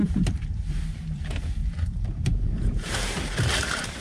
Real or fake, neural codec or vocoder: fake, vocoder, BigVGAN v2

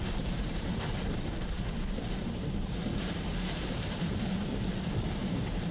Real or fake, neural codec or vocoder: fake, vocoder, BigVGAN v2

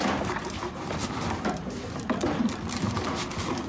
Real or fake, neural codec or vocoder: fake, vocoder, BigVGAN v2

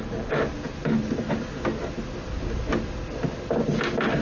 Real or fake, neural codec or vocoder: real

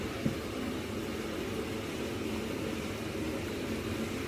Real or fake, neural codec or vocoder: real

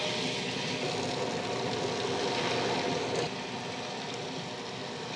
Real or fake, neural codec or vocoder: real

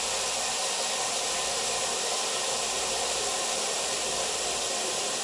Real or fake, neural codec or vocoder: fake, vocoder, BigVGAN v2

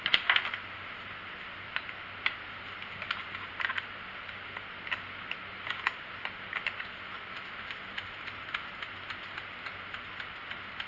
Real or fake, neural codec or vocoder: real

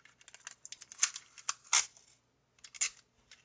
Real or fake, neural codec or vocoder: real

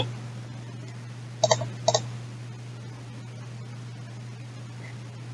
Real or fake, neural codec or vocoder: real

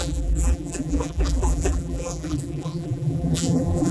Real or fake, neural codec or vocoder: fake, vocoder, BigVGAN v2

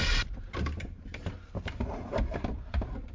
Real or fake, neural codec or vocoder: fake, vocoder, BigVGAN v2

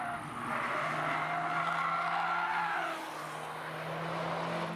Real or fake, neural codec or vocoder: real